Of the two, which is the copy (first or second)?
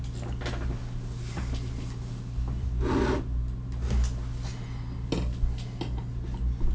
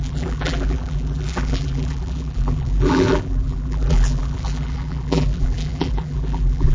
second